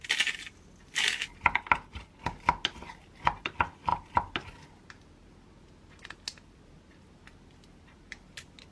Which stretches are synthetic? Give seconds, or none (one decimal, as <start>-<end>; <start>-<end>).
none